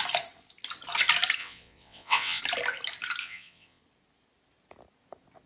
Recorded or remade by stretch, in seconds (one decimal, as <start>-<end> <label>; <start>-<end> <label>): 0.0-1.4 recorded; 1.4-2.4 remade; 2.4-3.2 recorded; 3.2-3.8 remade; 3.8-5.5 recorded